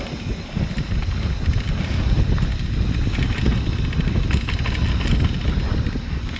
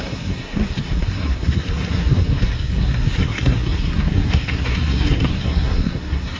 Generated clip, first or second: second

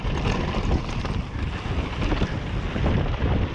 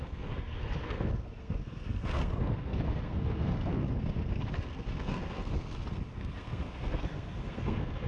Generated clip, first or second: second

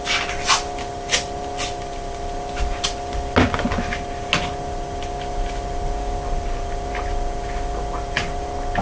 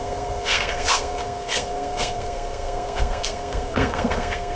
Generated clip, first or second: second